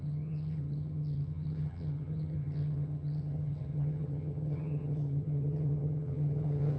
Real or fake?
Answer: fake